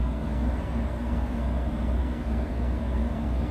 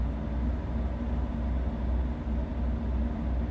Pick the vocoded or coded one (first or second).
first